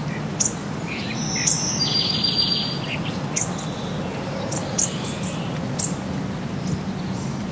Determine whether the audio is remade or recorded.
recorded